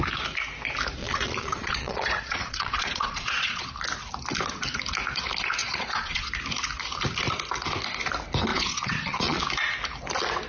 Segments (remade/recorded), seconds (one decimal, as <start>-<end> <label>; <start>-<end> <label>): 0.0-1.0 recorded; 1.0-3.6 remade; 3.6-5.6 recorded; 5.6-6.3 remade; 6.3-8.5 recorded; 8.5-9.4 remade; 9.4-10.5 recorded